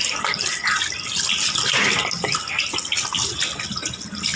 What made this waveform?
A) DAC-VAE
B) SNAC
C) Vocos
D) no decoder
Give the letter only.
D